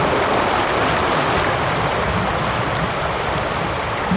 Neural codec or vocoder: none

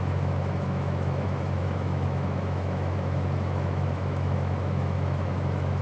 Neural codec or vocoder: autoencoder, DAC-VAE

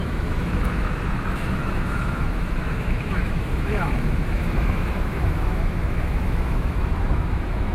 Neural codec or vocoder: autoencoder, DAC-VAE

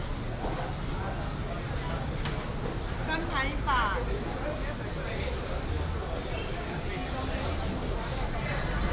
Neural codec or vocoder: none